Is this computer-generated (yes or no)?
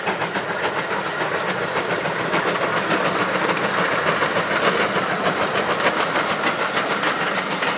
no